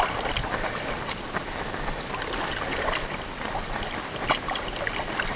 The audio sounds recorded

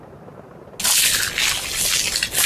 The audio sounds recorded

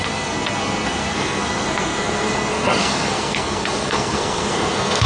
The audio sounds remade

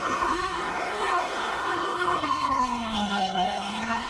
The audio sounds remade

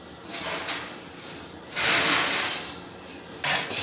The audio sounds recorded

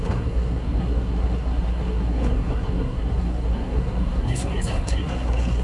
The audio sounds remade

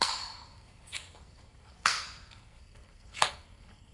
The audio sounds remade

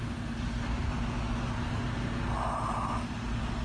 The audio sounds recorded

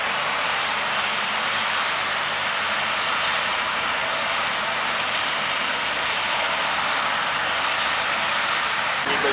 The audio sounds recorded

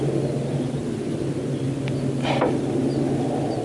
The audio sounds recorded